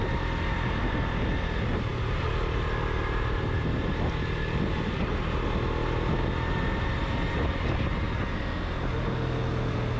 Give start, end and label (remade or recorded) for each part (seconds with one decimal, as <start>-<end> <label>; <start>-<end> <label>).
0.0-10.0 recorded